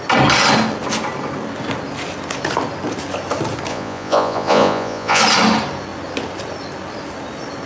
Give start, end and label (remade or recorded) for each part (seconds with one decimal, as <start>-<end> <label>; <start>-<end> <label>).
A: 0.0-3.7 recorded; 3.7-5.2 remade; 5.2-7.7 recorded